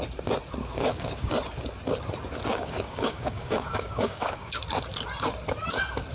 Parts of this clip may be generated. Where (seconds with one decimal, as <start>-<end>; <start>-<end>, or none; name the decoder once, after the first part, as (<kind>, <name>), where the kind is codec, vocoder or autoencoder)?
0.6-1.3 (codec, DAC); 2.5-4.6